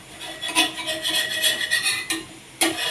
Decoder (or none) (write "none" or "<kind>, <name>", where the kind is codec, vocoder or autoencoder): none